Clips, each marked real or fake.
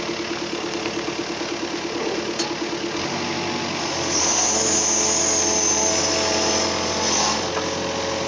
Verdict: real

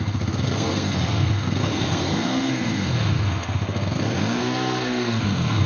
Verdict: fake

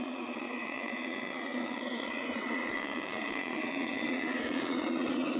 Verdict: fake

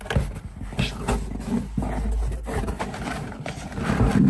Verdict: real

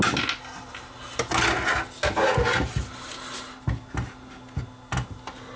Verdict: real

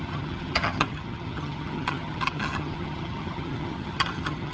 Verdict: fake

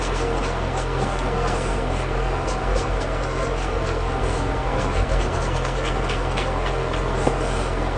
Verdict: fake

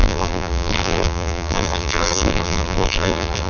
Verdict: fake